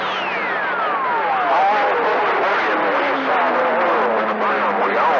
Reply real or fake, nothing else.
real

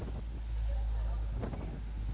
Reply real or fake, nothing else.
real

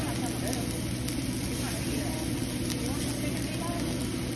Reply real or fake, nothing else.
real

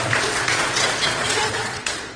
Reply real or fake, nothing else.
fake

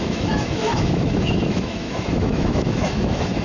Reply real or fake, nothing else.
fake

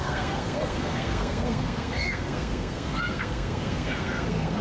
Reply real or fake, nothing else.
fake